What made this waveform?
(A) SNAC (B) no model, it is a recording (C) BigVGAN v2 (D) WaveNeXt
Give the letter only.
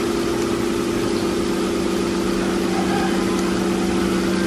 B